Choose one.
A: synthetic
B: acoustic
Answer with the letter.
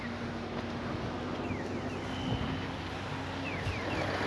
B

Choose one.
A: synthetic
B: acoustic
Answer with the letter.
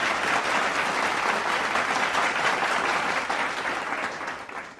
B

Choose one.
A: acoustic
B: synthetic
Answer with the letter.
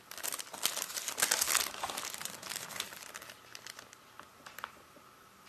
A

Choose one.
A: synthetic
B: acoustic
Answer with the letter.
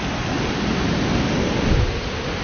B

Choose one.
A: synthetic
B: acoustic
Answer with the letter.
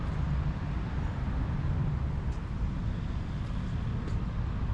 B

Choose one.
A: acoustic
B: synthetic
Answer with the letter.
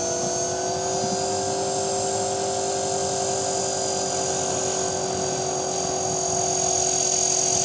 A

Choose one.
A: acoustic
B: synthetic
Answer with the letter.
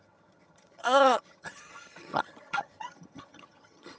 B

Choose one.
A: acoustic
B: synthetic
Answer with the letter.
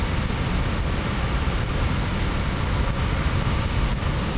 A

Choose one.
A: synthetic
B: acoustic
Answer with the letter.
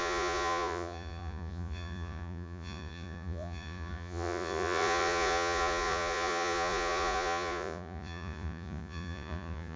A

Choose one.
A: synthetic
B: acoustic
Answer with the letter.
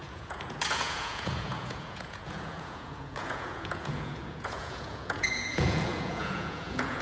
A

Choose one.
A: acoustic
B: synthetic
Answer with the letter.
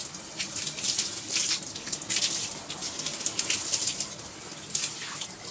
A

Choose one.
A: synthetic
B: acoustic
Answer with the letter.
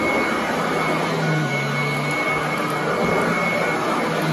B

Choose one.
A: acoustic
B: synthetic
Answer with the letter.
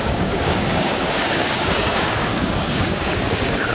B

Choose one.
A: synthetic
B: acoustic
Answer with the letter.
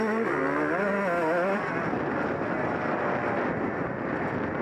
B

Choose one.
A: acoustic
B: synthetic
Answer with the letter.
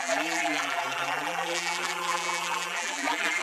B